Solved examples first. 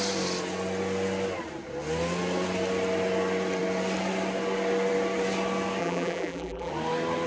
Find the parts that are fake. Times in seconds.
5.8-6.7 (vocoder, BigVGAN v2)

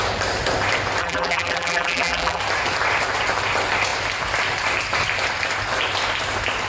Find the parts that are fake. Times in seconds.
1.0-2.4 (vocoder, BigVGAN v2)